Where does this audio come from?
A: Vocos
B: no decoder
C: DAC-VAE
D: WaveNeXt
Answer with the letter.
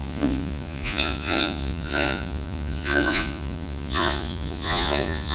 A